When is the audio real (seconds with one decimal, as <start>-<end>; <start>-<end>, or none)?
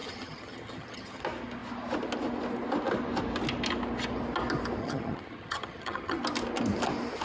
1.2-4.8; 6.2-7.2